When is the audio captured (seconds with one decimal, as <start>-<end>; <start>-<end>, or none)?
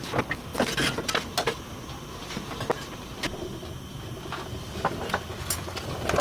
0.0-6.2